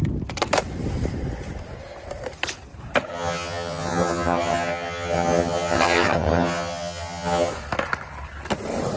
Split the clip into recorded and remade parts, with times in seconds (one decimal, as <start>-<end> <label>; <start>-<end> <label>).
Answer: 0.0-3.1 recorded; 3.1-7.5 remade; 7.5-9.0 recorded